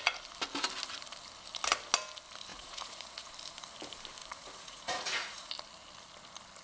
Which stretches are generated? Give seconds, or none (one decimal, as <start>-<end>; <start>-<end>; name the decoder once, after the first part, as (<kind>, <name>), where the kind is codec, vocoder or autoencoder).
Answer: 2.5-3.3 (vocoder, Vocos); 4.2-5.5